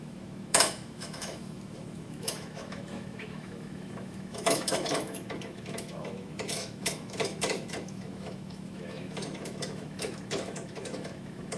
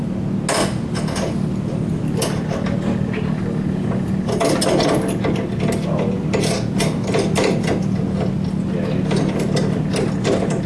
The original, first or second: second